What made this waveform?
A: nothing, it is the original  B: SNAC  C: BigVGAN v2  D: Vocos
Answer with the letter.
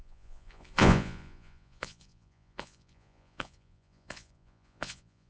D